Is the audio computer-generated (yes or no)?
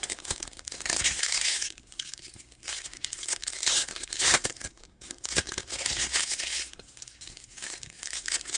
yes